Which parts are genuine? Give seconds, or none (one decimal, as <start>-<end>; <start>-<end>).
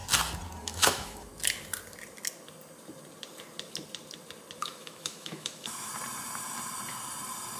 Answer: 0.0-0.6; 1.3-4.6; 5.9-7.6